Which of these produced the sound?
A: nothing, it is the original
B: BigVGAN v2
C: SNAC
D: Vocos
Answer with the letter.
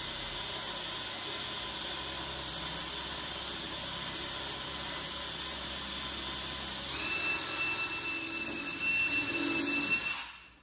A